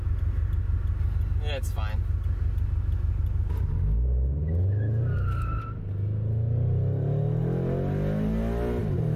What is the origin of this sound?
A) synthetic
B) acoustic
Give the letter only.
B